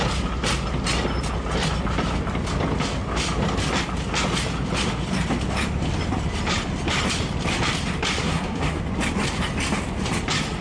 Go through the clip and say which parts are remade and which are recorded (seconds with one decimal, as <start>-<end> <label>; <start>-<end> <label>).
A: 0.0-8.2 recorded; 8.2-8.8 remade; 8.8-10.6 recorded